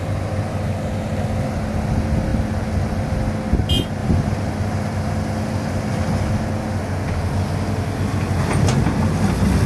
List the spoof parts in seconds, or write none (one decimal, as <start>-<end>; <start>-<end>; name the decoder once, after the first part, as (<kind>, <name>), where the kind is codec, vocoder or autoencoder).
4.0-6.1 (vocoder, BigVGAN v2)